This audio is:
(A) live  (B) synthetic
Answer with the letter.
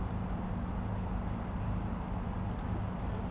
A